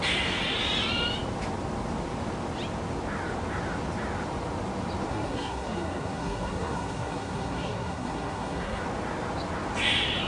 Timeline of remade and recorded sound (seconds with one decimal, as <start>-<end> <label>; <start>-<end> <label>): 0.0-5.1 recorded; 5.1-8.8 remade; 8.8-10.3 recorded